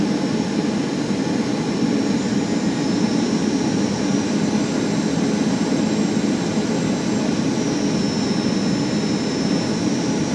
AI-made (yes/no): no